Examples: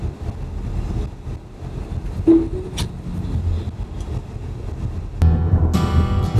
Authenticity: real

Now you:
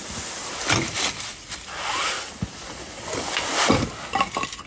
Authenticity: real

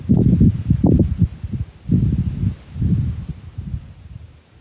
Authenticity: fake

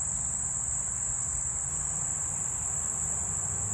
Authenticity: real